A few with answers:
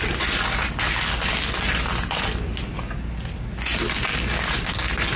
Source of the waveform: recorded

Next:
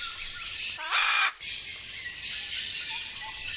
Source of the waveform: recorded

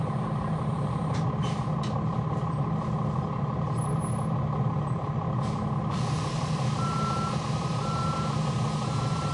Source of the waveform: recorded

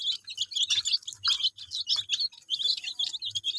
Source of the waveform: recorded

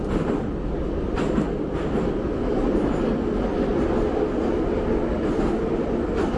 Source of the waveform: recorded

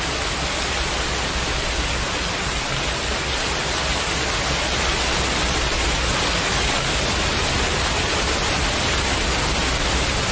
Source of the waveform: recorded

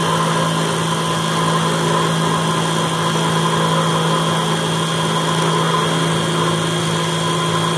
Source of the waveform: recorded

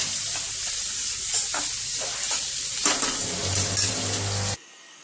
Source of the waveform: recorded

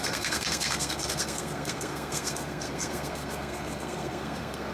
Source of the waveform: remade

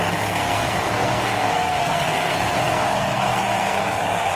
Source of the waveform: remade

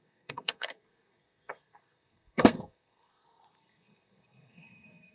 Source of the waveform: remade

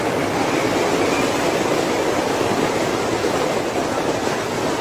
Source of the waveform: recorded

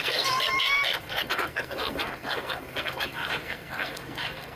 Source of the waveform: remade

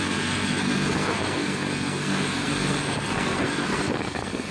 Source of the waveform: remade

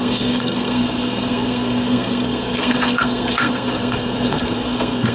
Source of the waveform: remade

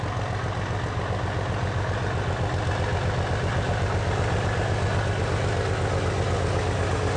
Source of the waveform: recorded